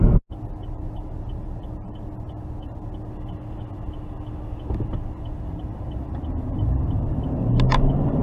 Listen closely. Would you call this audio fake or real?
real